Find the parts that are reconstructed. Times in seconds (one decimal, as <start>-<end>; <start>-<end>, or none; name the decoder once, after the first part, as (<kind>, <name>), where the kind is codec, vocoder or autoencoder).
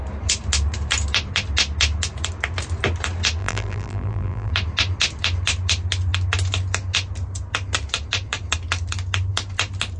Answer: 3.4-4.5 (vocoder, BigVGAN v2)